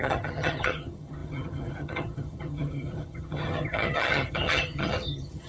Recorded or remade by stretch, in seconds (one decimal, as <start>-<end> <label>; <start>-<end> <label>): 0.0-5.5 remade